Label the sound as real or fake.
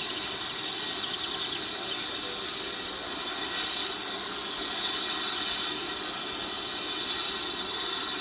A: real